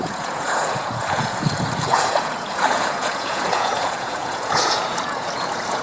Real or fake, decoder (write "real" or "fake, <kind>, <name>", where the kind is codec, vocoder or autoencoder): fake, vocoder, Vocos